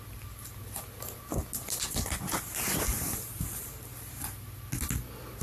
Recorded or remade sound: recorded